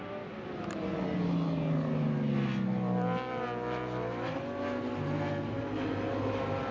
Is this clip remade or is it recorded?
recorded